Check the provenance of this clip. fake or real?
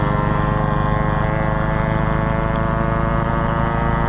real